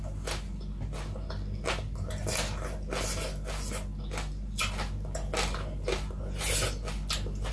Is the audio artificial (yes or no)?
no